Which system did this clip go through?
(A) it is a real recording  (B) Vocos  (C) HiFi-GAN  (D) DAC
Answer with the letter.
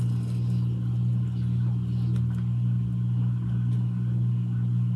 A